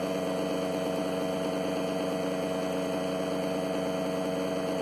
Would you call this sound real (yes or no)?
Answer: yes